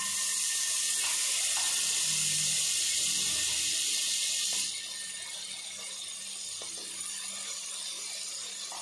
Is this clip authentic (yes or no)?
yes